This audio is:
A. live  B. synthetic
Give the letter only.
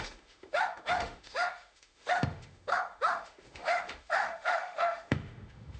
B